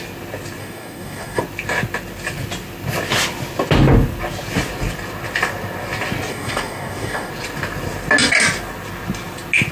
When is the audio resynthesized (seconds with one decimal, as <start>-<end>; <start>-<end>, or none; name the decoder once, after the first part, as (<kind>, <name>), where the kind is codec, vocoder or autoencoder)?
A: 0.6-1.4 (codec, DAC); 6.3-7.3